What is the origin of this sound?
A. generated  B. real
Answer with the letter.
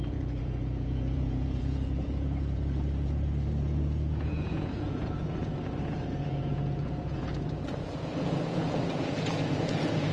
A